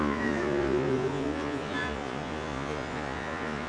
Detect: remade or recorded remade